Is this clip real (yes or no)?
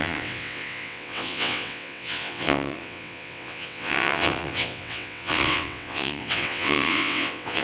no